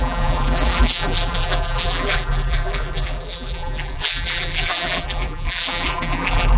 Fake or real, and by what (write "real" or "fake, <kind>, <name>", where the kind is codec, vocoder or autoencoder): fake, vocoder, BigVGAN v2